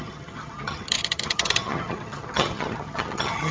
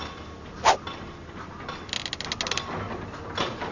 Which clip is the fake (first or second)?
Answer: first